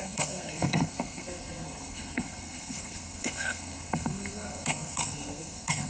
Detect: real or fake fake